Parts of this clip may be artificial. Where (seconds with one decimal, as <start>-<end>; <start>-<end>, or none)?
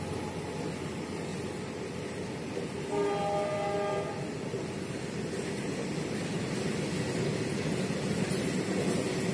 none